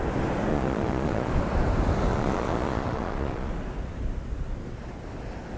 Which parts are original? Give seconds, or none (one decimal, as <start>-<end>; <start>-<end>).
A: 0.0-0.5; 1.3-2.1; 3.5-5.6